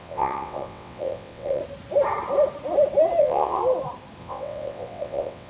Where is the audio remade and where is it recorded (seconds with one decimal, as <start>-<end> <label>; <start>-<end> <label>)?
0.0-1.6 remade; 1.6-3.2 recorded; 3.2-3.6 remade; 3.6-4.2 recorded; 4.2-5.5 remade